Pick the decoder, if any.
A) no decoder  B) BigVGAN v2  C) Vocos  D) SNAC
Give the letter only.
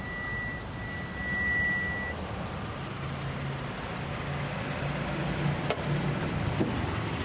A